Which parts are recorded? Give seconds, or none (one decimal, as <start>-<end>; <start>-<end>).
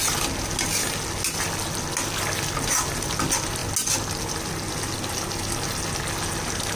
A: 0.0-6.8